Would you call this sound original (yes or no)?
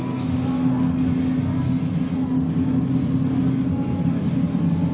yes